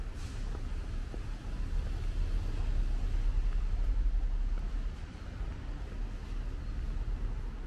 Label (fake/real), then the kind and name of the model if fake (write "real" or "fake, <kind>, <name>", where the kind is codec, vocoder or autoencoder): real